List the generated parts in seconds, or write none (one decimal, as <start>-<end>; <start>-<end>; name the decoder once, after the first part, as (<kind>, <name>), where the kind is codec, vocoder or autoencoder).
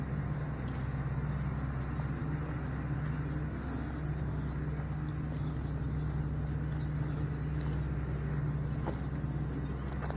none